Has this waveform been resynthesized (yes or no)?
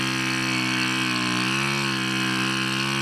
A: no